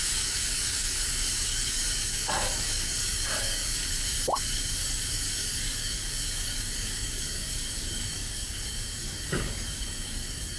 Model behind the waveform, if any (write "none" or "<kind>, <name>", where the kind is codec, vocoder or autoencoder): codec, DAC